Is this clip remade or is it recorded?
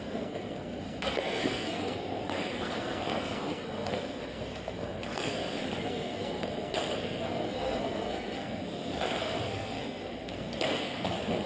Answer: remade